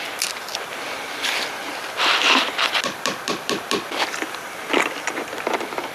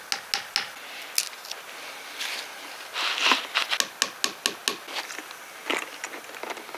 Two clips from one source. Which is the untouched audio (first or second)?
second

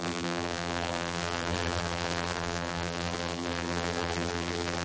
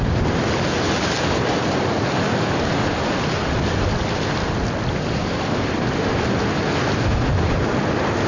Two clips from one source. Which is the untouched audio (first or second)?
second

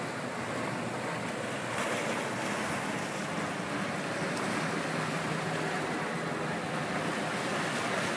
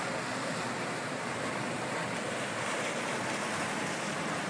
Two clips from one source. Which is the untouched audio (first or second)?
first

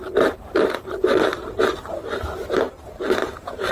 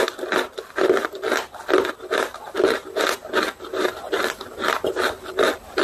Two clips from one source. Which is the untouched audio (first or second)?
second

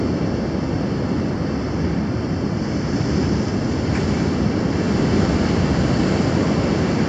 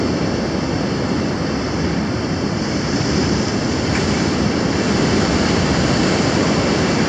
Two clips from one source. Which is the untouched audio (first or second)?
first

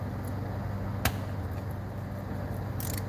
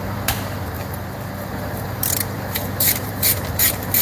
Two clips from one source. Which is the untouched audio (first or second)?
first